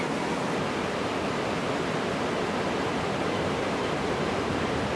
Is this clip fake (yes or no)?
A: no